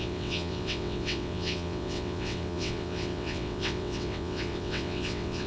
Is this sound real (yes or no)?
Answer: no